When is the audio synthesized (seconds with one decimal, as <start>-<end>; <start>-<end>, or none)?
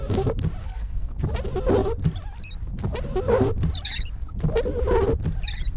0.6-1.2